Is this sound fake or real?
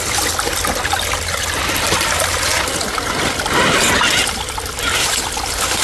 real